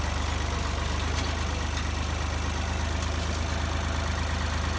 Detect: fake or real real